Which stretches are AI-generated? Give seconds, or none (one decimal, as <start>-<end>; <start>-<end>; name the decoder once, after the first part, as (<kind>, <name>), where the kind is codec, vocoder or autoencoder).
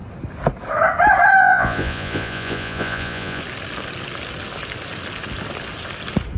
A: 1.4-3.4 (vocoder, Vocos)